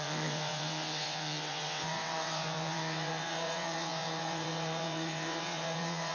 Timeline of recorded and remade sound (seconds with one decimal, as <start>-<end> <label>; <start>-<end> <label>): 0.0-6.1 remade